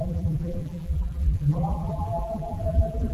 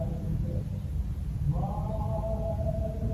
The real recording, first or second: second